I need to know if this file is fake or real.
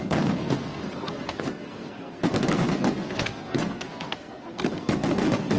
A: fake